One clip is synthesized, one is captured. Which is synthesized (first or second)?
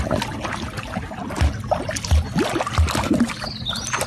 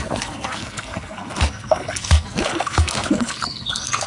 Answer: second